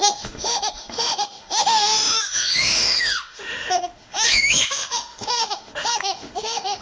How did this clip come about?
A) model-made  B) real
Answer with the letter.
A